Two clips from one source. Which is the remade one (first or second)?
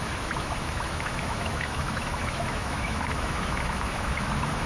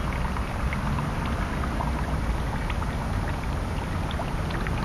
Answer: first